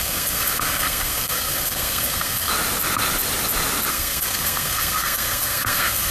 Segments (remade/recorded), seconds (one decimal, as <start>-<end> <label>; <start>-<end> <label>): 0.0-2.5 remade; 2.5-3.9 recorded; 3.9-6.1 remade